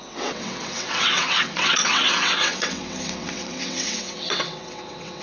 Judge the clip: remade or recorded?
remade